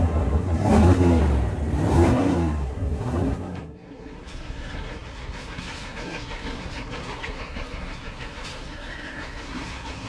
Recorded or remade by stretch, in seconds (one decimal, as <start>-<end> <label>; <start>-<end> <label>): 0.0-1.2 remade; 1.2-1.9 recorded; 1.9-10.1 remade